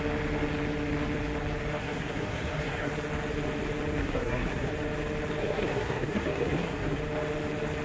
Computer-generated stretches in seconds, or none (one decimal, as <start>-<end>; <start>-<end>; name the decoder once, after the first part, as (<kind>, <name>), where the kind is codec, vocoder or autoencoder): 1.8-2.9 (codec, SNAC); 4.0-4.7; 5.4-7.0